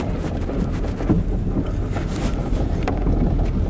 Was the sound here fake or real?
real